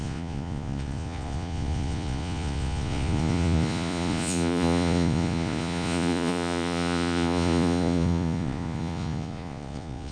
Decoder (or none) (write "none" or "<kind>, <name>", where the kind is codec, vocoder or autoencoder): vocoder, Vocos